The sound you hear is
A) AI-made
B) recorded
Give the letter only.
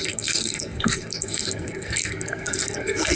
A